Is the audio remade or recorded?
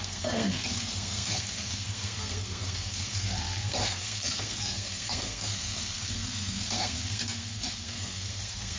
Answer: remade